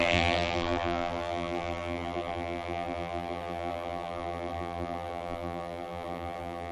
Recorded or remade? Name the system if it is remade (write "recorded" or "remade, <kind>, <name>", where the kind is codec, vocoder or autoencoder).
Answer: remade, vocoder, BigVGAN v2